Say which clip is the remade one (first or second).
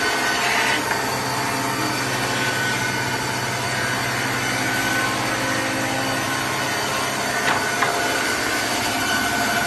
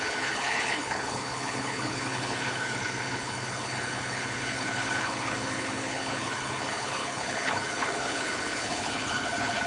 second